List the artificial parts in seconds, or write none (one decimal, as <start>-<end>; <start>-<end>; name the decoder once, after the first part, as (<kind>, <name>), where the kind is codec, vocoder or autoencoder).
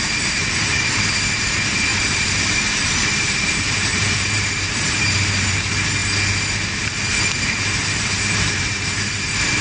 0.0-6.0 (vocoder, BigVGAN v2); 6.8-9.6